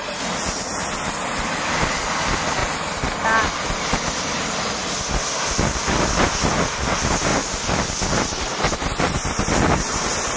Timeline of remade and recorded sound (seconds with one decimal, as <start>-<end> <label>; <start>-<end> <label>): 0.0-10.4 recorded

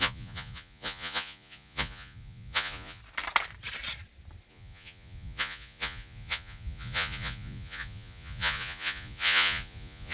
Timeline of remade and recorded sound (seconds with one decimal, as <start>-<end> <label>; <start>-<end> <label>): 0.0-3.0 remade; 3.0-4.5 recorded; 4.5-10.1 remade

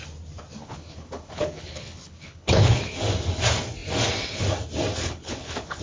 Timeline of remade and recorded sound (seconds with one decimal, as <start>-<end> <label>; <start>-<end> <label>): 0.0-0.6 recorded; 0.6-2.8 remade; 2.8-5.0 recorded; 5.0-5.8 remade